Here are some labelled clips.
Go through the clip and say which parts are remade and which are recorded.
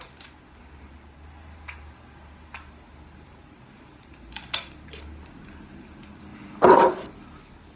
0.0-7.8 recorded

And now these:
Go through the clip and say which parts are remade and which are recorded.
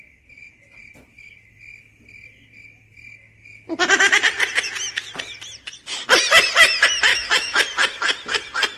0.0-7.1 recorded; 7.1-7.6 remade; 7.6-8.8 recorded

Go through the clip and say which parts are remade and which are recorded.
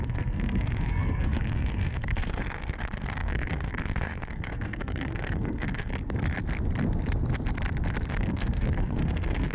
0.0-5.9 remade; 5.9-8.1 recorded; 8.1-9.5 remade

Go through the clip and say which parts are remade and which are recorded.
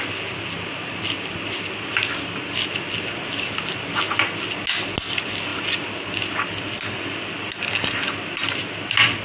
0.0-9.2 recorded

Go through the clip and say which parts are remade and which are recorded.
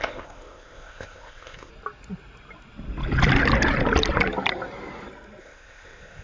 0.0-1.7 remade; 1.7-5.4 recorded; 5.4-6.2 remade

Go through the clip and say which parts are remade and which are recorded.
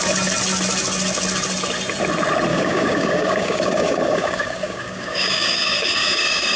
0.0-2.5 recorded; 2.5-6.6 remade